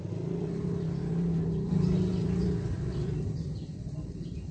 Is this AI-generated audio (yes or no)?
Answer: no